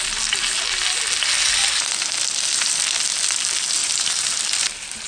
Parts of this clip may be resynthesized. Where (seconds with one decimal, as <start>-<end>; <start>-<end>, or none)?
1.6-2.2; 3.8-5.1